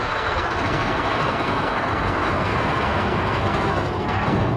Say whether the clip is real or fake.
fake